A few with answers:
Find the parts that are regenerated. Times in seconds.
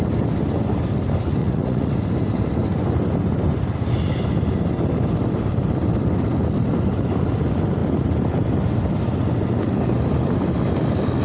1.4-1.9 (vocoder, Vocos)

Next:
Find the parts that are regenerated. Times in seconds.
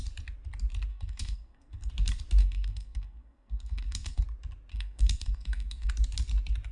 0.9-1.9 (codec, SNAC); 2.4-4.2; 4.7-5.9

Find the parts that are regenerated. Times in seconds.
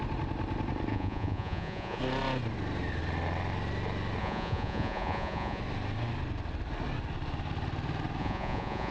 0.9-2.0 (vocoder, Vocos); 4.2-5.6; 8.2-8.9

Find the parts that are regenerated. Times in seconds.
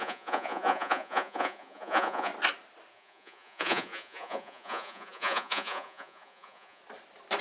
0.0-2.3 (vocoder, Vocos); 2.9-6.8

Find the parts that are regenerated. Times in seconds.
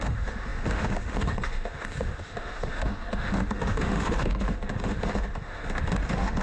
0.0-6.4 (autoencoder, DAC-VAE)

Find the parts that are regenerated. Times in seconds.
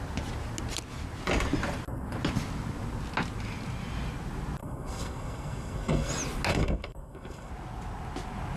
4.6-6.1 (codec, SNAC); 6.5-7.5